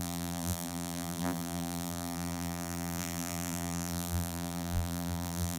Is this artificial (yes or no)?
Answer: yes